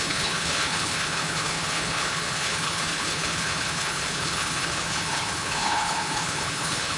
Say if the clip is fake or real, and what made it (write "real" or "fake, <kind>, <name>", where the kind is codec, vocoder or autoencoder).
fake, codec, HILCodec